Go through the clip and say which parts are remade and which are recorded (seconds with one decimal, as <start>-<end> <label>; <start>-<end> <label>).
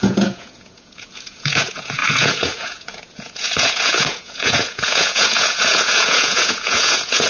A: 0.0-7.3 remade